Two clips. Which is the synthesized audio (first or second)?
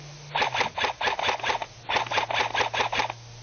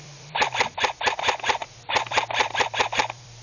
second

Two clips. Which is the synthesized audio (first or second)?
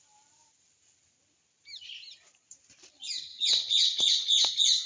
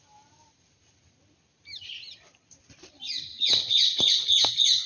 second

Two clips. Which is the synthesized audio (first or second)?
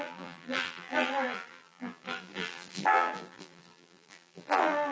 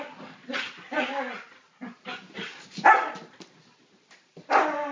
first